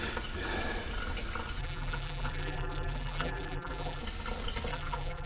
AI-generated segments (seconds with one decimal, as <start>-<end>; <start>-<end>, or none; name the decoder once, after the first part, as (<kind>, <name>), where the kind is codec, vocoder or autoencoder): 1.6-4.0 (vocoder, BigVGAN v2); 4.7-5.3